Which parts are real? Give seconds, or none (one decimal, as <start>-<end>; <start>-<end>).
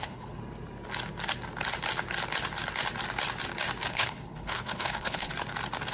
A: 0.4-3.9; 5.3-5.9